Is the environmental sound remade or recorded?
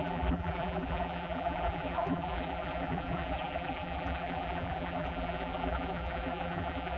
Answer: remade